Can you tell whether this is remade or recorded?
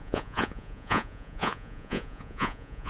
remade